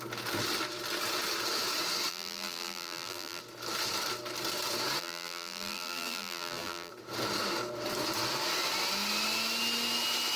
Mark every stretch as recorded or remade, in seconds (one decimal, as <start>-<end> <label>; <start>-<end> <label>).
0.0-2.1 recorded; 2.1-3.4 remade; 3.4-5.0 recorded; 5.0-6.9 remade; 6.9-10.4 recorded